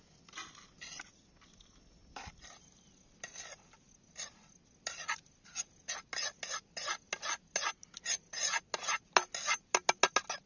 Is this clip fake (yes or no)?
no